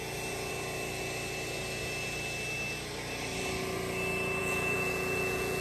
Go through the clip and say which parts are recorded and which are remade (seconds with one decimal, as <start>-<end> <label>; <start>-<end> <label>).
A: 0.0-4.4 recorded; 4.4-5.6 remade

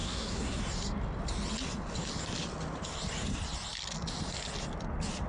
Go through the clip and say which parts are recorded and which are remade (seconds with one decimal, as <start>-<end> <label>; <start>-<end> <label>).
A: 0.0-0.6 remade; 0.6-5.3 recorded

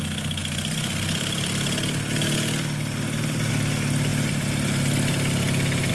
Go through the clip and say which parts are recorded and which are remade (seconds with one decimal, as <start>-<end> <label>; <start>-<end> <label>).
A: 0.0-5.9 recorded